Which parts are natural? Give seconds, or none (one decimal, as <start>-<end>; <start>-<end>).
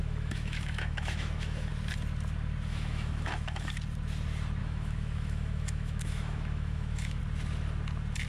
1.7-2.7; 3.7-4.6; 7.2-8.3